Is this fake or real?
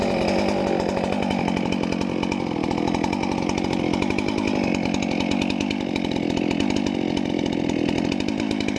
real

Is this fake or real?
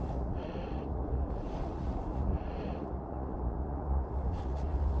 fake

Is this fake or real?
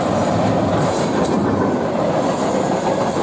real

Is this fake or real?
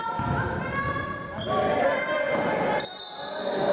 real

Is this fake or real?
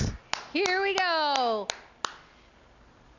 real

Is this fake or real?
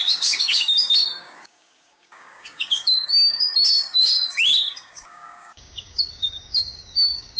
fake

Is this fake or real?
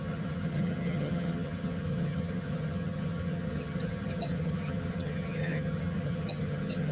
fake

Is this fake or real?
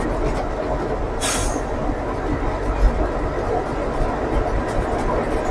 real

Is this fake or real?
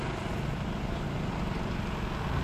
real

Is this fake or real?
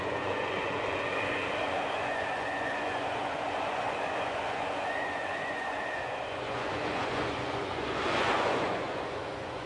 fake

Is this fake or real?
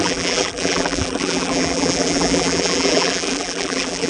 fake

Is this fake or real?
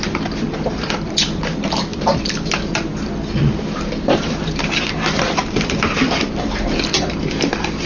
fake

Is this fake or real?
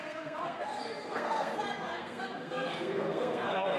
fake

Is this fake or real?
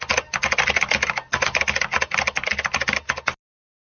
real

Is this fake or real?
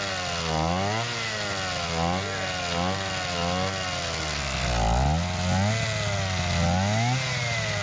real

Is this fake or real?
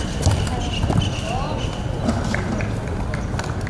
real